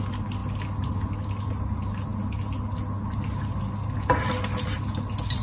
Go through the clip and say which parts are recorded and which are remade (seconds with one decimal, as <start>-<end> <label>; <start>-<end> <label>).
0.0-5.4 recorded